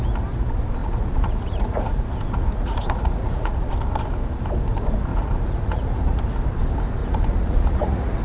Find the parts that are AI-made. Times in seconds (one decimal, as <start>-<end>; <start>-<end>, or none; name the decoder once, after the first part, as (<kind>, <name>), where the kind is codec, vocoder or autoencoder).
0.8-3.7 (vocoder, Vocos); 5.1-6.2; 7.0-8.2